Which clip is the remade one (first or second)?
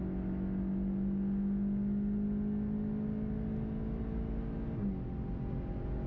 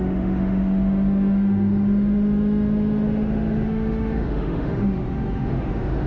second